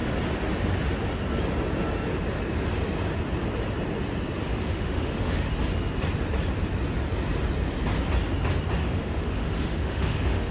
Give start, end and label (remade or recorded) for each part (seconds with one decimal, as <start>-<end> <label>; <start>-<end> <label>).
0.0-4.5 recorded; 4.5-5.5 remade; 5.5-8.8 recorded; 8.8-10.5 remade